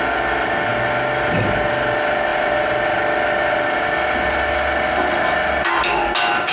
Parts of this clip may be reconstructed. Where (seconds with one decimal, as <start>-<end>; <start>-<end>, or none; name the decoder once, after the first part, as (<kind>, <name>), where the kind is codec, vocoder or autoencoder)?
none